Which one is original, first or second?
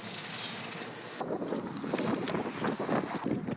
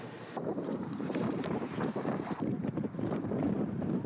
first